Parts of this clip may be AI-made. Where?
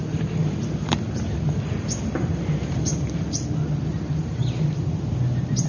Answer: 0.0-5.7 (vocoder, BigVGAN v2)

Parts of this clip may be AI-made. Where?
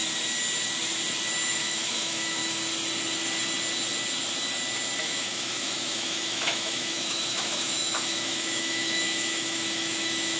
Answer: 1.5-2.4 (autoencoder, DAC-VAE); 5.0-10.4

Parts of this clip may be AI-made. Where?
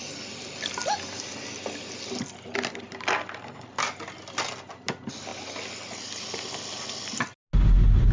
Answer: none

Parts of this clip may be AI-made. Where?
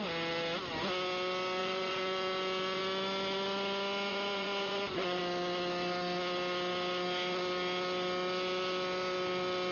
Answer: 1.6-2.8 (vocoder, Vocos); 4.1-5.2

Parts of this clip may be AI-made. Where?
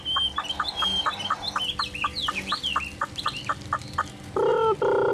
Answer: none